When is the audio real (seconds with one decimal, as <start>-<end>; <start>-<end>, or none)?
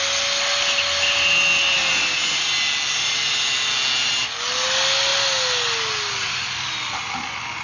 0.0-7.6